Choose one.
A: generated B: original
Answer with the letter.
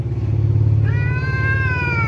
B